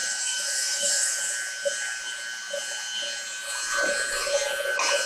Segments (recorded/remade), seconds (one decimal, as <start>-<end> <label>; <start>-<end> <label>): 0.0-1.2 remade; 1.2-5.1 recorded